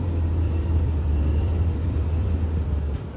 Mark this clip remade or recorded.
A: remade